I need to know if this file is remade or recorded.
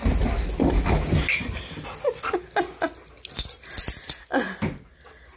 recorded